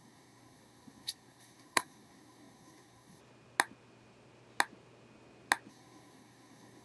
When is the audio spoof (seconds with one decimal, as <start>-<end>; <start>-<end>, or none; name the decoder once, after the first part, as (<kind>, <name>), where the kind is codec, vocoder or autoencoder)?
0.0-3.2 (codec, SNAC); 5.7-6.8